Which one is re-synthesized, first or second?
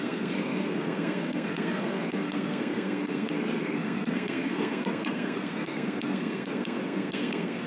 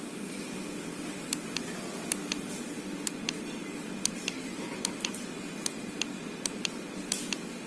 first